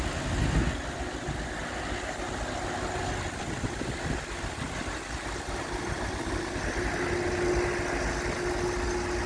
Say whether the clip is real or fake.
real